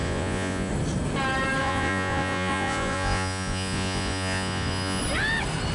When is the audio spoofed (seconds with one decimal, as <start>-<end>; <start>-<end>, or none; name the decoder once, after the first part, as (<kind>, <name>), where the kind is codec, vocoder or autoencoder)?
0.0-0.7 (vocoder, Vocos); 1.6-5.0